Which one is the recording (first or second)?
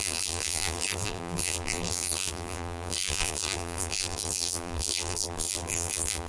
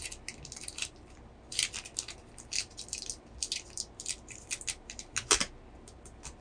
second